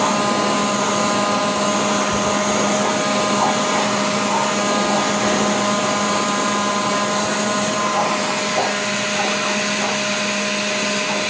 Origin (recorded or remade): recorded